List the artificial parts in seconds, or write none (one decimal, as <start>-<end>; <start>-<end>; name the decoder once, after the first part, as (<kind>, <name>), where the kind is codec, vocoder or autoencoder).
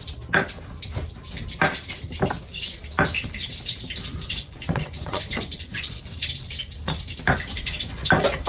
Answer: 4.1-6.0 (vocoder, Vocos); 7.5-8.1